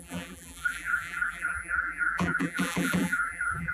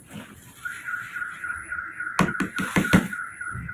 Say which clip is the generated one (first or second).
first